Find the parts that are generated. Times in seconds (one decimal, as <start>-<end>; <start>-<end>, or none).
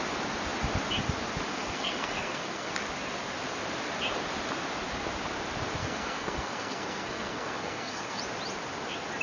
1.5-2.7; 5.8-8.2